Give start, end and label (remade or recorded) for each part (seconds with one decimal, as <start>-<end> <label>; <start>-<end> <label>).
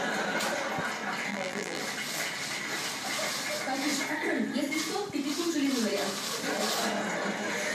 0.0-1.3 recorded; 1.3-1.8 remade; 1.8-7.7 recorded